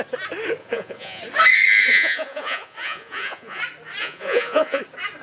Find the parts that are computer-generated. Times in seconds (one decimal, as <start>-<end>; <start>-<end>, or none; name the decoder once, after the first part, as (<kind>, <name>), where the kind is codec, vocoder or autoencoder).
0.6-1.2 (vocoder, Vocos); 1.9-3.6; 4.0-4.8